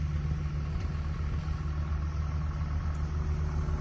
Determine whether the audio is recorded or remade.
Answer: recorded